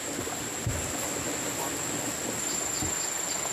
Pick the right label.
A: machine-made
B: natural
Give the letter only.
B